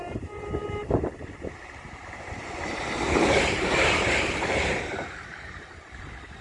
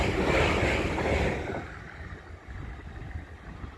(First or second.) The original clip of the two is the second